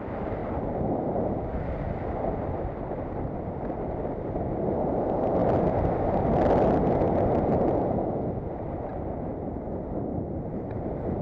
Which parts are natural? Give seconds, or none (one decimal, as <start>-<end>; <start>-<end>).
0.0-11.2